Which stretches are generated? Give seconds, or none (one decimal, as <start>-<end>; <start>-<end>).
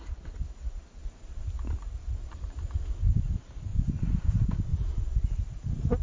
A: 1.0-3.0; 3.7-4.2; 4.7-6.0